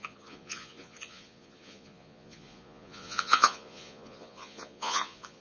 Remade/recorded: remade